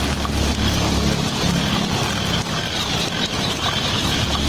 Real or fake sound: real